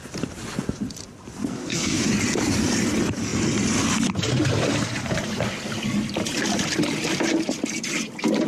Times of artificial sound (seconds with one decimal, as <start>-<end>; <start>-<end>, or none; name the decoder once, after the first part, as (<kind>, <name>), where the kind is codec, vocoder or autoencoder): 1.4-2.0 (codec, SNAC)